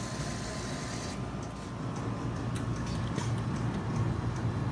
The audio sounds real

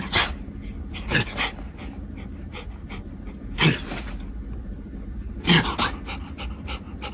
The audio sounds real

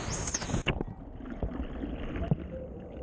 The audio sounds real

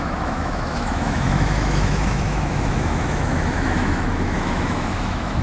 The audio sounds fake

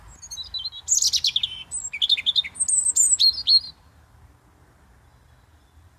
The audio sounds real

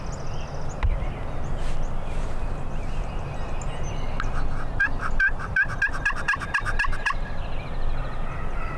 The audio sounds real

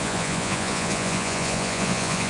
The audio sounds fake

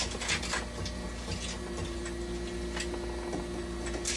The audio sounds real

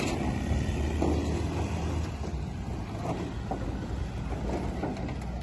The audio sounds real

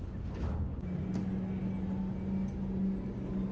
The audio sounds real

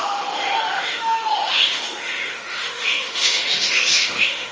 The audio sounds fake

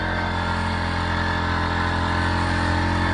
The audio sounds real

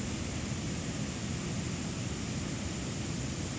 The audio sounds real